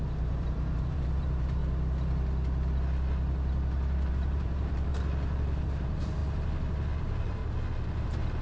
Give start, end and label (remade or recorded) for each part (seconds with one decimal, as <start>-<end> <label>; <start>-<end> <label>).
0.0-1.6 remade; 1.6-4.1 recorded; 4.1-4.9 remade; 4.9-5.6 recorded; 5.6-6.2 remade; 6.2-7.0 recorded; 7.0-7.4 remade; 7.4-8.0 recorded; 8.0-8.4 remade